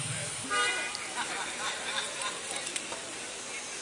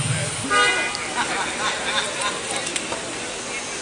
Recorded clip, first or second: second